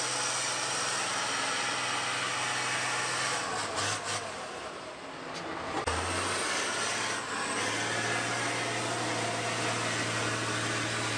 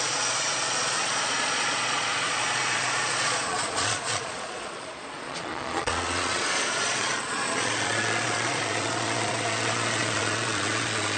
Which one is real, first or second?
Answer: first